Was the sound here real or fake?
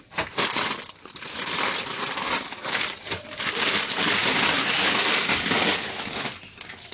real